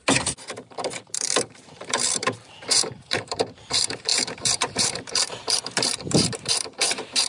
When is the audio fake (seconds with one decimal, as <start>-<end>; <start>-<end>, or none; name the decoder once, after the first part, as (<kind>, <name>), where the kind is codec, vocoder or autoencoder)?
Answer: 0.0-7.3 (vocoder, BigVGAN v2)